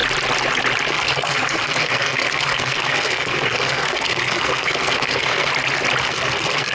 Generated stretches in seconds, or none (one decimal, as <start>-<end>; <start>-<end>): 0.9-5.5; 6.0-6.7